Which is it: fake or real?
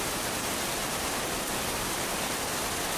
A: real